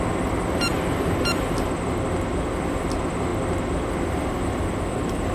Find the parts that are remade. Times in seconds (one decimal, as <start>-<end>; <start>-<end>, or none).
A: none